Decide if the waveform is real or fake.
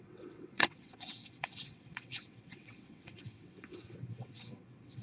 fake